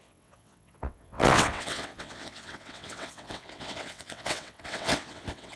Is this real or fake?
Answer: fake